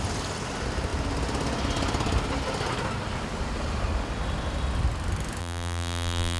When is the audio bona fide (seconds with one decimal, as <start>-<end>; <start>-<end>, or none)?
0.0-5.4